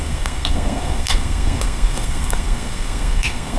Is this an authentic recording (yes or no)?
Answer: no